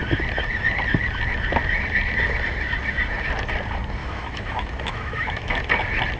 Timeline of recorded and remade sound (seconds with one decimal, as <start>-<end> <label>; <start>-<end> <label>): 0.0-4.0 recorded; 4.0-5.6 remade; 5.6-6.2 recorded